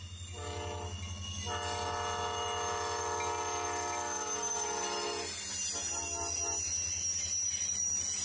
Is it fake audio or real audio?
real